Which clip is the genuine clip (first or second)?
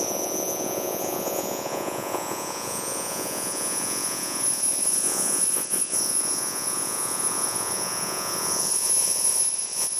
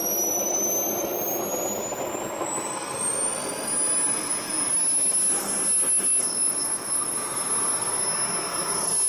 second